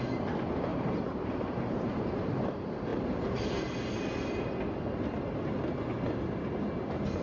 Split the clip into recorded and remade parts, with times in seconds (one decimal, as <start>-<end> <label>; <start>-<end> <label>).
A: 0.0-0.7 recorded; 0.7-2.0 remade; 2.0-2.9 recorded; 2.9-3.6 remade; 3.6-7.2 recorded